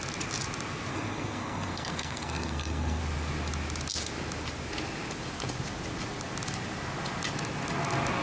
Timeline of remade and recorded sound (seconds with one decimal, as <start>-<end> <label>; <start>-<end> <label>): 0.0-0.9 recorded; 0.9-3.0 remade; 3.0-8.2 recorded